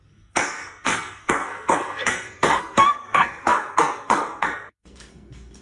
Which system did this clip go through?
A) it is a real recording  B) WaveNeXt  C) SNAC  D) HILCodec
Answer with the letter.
C